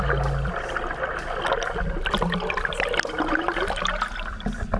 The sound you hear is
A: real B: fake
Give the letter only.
A